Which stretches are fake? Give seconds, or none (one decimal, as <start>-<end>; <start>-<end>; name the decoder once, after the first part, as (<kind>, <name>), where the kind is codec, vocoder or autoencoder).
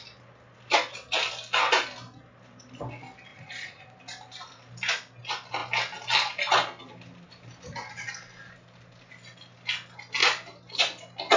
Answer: 3.3-3.9 (vocoder, Vocos)